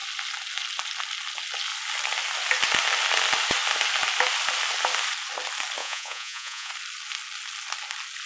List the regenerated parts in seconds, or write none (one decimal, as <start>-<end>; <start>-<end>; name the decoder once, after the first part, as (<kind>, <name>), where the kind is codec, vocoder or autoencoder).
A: 5.8-6.7 (vocoder, Vocos)